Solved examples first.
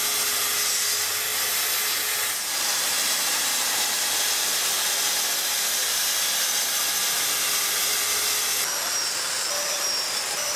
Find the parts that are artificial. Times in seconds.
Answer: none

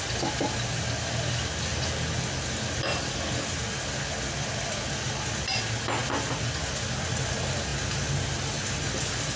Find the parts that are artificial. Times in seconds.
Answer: none

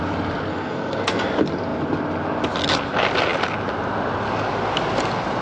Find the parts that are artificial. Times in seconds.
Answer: 0.5-1.2

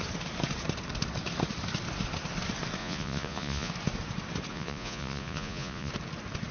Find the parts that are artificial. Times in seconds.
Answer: 2.8-3.7; 4.5-5.9